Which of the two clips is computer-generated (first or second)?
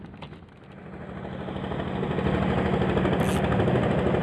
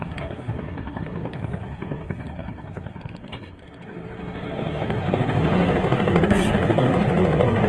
second